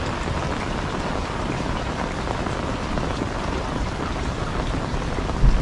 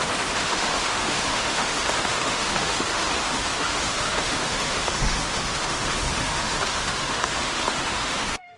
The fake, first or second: second